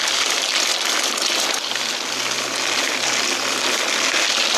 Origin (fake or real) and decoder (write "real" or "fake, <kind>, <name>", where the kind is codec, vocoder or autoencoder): real